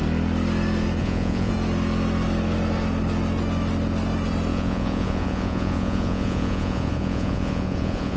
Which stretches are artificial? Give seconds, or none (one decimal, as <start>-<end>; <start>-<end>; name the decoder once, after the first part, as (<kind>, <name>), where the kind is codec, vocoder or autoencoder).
1.0-1.5 (vocoder, Vocos); 4.5-8.2